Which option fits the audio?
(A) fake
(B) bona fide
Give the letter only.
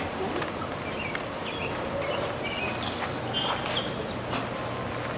B